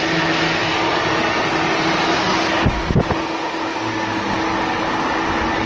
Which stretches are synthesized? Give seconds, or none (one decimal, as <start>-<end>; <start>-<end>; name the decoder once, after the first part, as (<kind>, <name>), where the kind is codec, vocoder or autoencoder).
none